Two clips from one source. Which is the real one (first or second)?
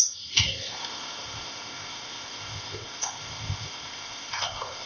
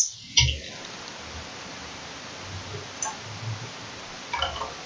second